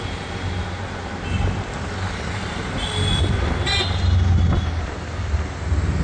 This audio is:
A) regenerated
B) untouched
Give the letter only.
B